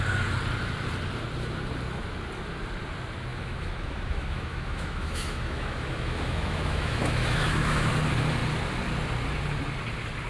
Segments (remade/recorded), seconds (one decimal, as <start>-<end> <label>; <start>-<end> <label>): 0.0-3.3 recorded; 3.3-7.9 remade; 7.9-10.3 recorded